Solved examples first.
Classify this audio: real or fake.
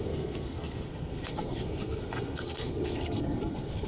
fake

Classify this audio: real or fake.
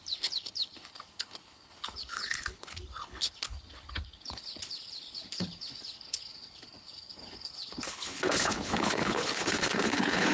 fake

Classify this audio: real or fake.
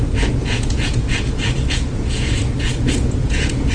fake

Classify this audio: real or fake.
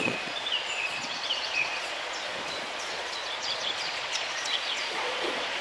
fake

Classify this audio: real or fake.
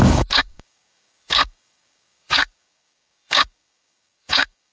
fake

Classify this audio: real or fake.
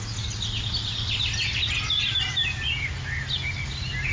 real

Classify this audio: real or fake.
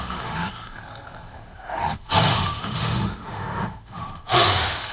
fake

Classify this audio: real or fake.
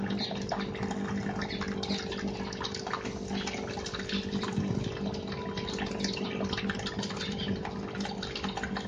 real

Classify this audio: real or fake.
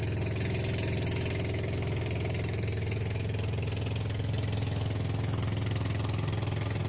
real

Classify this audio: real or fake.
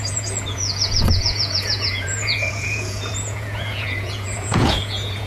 fake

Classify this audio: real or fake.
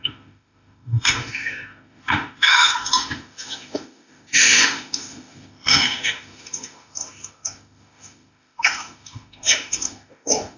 fake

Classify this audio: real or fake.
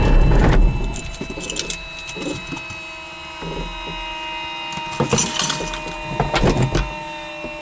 real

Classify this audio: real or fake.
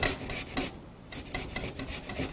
real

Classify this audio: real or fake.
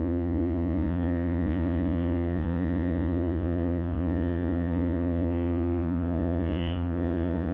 fake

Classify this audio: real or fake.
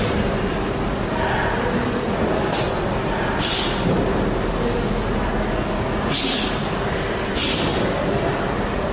real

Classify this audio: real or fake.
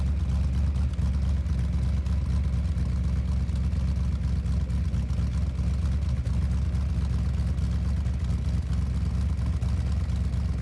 real